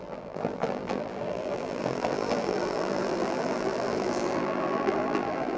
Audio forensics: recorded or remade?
remade